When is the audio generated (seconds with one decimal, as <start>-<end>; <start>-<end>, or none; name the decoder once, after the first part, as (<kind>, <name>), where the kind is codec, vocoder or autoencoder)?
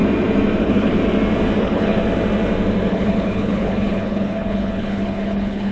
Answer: 0.6-1.0 (codec, HILCodec); 1.6-2.0; 2.9-5.7